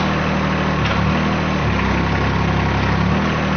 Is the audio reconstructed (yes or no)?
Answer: no